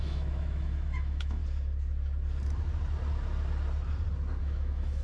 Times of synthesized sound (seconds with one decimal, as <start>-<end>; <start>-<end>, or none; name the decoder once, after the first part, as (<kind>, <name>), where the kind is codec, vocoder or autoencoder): 0.0-1.4 (autoencoder, DAC-VAE); 4.4-5.0